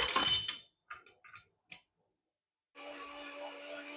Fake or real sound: real